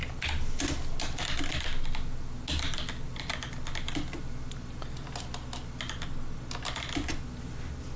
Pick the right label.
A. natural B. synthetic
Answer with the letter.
A